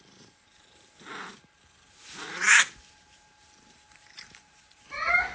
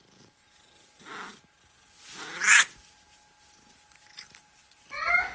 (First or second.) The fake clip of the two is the first